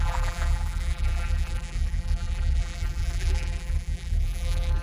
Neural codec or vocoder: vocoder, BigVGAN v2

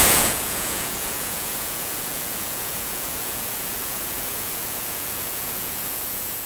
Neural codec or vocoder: vocoder, Vocos